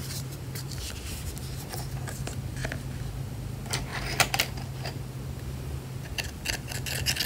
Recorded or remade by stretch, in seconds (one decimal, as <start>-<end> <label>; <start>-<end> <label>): 0.0-1.8 remade; 1.8-2.6 recorded; 2.6-3.1 remade; 3.1-7.3 recorded